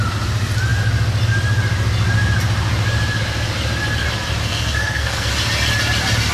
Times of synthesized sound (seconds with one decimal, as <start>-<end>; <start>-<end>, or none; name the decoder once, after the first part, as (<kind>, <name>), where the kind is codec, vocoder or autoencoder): 4.4-5.3 (codec, SNAC)